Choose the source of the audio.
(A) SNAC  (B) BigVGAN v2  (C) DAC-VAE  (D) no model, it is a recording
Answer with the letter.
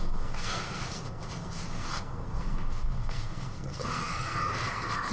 A